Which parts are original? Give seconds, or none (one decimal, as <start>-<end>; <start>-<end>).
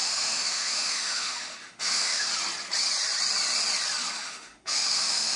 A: 2.3-4.1